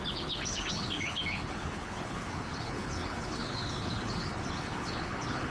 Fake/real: fake